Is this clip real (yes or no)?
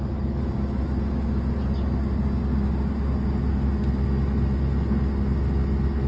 yes